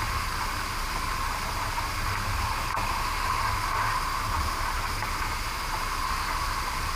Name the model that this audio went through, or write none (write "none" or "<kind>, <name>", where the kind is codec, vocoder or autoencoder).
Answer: none